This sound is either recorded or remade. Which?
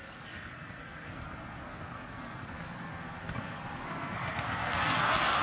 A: remade